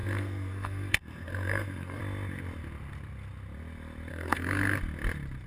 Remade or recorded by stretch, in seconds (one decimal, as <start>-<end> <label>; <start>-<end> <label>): 0.0-2.0 remade; 2.0-4.1 recorded; 4.1-4.8 remade; 4.8-5.5 recorded